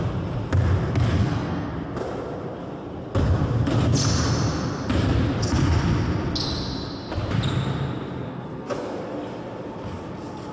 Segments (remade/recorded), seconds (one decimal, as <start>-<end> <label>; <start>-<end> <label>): 0.0-1.2 recorded; 1.2-1.7 remade; 1.7-8.3 recorded; 8.3-9.0 remade; 9.0-10.5 recorded